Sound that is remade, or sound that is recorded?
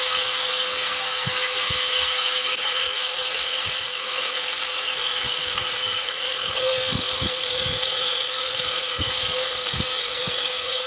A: remade